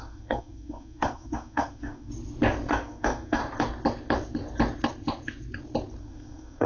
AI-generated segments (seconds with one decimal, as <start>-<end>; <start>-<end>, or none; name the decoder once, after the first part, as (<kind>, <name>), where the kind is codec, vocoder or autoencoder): 0.0-2.1 (codec, SNAC); 2.7-3.4; 6.0-6.7